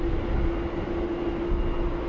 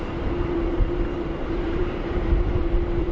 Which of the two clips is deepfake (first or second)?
second